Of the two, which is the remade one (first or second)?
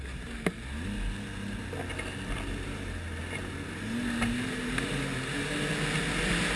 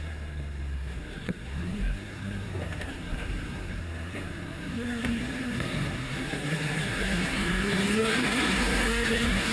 second